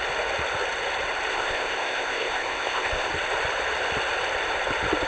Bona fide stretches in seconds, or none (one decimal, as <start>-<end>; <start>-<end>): 0.0-1.3; 3.1-5.1